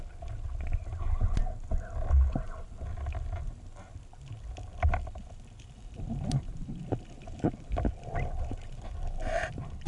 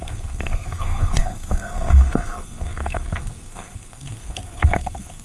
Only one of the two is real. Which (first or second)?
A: first